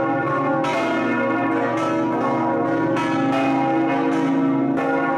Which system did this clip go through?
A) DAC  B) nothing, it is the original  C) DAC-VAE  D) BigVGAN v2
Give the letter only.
B